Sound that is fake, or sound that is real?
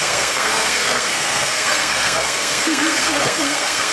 fake